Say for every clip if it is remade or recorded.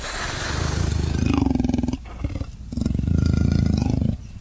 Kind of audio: recorded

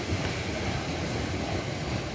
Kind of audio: recorded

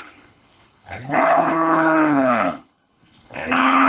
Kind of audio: remade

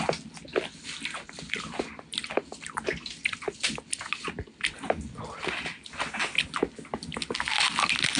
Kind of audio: recorded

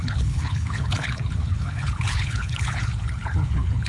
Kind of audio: remade